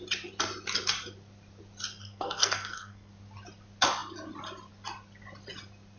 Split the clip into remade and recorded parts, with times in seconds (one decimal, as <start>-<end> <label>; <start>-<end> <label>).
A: 0.0-2.0 recorded; 2.0-3.1 remade; 3.1-6.0 recorded